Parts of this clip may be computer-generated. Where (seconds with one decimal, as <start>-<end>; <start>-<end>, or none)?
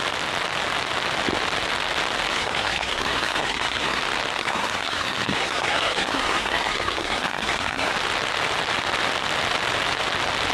2.3-4.0; 4.4-7.9